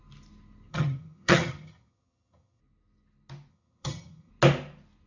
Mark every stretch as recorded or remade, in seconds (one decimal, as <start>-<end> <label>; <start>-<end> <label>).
0.0-0.7 recorded; 0.7-2.6 remade; 2.6-3.5 recorded; 3.5-4.3 remade; 4.3-5.1 recorded